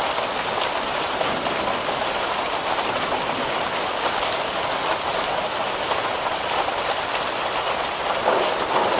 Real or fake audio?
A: real